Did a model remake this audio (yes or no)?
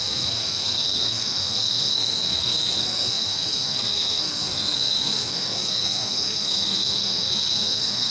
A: yes